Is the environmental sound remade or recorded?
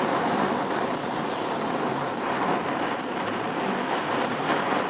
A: remade